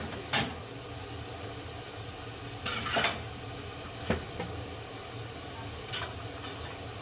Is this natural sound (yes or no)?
yes